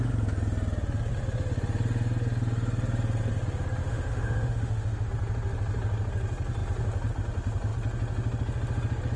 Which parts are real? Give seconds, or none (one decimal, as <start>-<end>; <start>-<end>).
0.0-3.8; 5.1-9.2